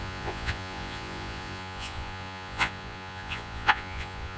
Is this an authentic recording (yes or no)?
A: no